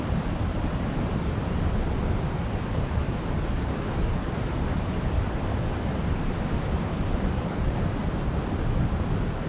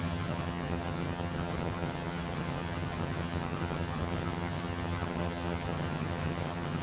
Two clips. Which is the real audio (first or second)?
first